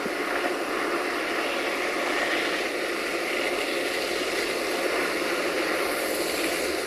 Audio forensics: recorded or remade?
recorded